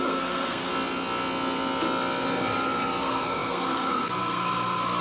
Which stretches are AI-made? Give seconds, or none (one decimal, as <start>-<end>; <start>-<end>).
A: 0.0-0.7; 3.0-5.0